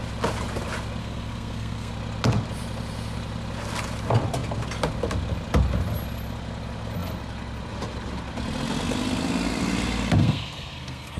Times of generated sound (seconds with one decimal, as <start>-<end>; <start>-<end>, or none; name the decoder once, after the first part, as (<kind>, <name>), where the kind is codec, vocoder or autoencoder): 1.0-1.9 (codec, SNAC); 10.2-11.2